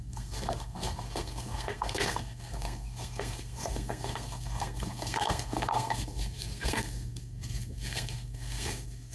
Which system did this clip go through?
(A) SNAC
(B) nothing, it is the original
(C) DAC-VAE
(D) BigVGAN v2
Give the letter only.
A